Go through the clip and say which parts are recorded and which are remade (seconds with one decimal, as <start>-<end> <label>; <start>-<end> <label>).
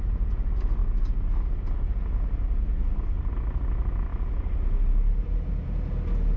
0.0-6.4 recorded